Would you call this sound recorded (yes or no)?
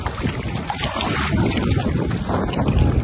yes